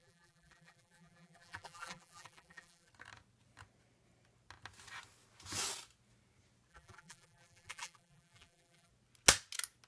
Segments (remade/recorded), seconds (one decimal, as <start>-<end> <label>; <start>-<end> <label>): 0.0-2.9 remade; 2.9-6.7 recorded; 6.7-8.9 remade; 8.9-9.9 recorded